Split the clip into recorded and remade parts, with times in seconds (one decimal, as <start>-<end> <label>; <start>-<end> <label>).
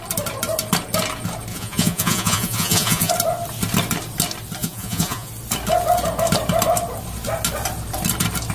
0.0-1.5 recorded; 1.5-3.1 remade; 3.1-4.6 recorded; 4.6-5.3 remade; 5.3-8.5 recorded